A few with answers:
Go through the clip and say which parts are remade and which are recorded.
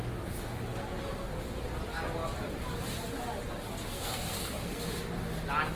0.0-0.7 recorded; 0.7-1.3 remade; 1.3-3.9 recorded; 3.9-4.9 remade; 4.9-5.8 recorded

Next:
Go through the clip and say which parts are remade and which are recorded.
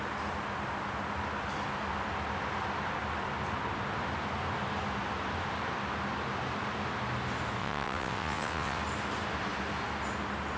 0.0-7.6 recorded; 7.6-8.8 remade; 8.8-10.6 recorded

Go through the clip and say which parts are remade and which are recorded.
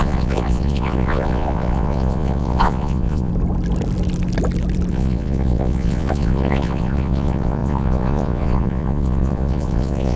0.0-3.3 remade; 3.3-4.9 recorded; 4.9-10.2 remade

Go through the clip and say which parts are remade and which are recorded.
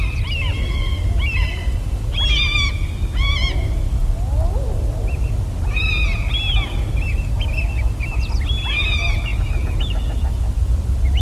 0.0-11.2 recorded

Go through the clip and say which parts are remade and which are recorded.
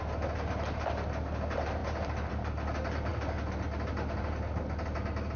0.0-5.4 recorded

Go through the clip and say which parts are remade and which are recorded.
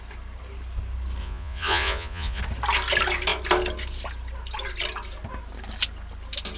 0.0-1.2 recorded; 1.2-2.4 remade; 2.4-6.6 recorded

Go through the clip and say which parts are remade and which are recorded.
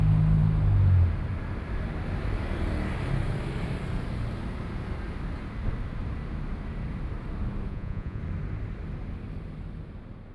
0.0-7.7 recorded; 7.7-8.2 remade; 8.2-10.3 recorded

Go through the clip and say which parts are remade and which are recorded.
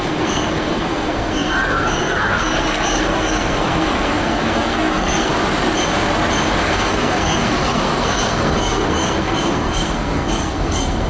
0.0-5.3 remade; 5.3-6.6 recorded; 6.6-11.1 remade